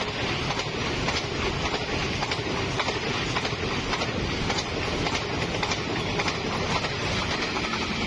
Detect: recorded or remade recorded